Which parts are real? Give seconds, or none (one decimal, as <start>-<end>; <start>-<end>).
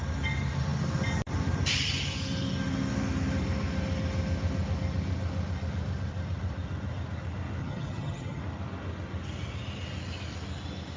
0.0-7.6; 8.4-11.0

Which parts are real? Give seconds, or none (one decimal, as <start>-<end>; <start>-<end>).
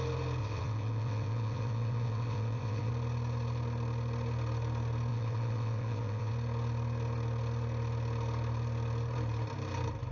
0.0-0.4; 2.9-5.1; 6.3-10.1